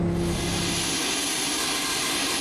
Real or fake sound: real